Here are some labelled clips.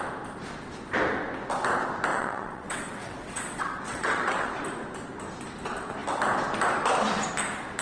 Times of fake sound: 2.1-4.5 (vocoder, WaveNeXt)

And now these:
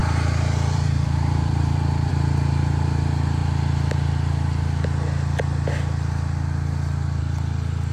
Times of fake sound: 0.0-2.1 (vocoder, BigVGAN v2)

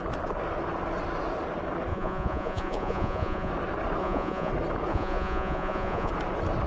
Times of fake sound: 1.9-3.5 (vocoder, Vocos); 4.0-4.5; 4.9-6.1

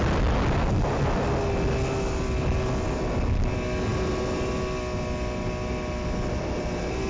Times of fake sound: none